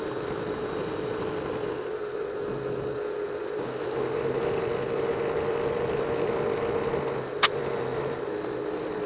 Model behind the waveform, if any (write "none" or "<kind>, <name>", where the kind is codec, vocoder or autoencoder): none